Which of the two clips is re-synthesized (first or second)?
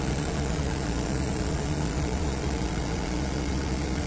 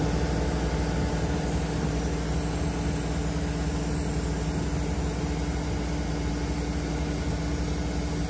first